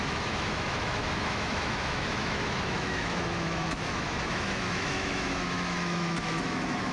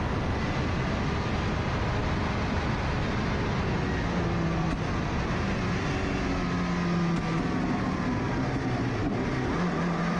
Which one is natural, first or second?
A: second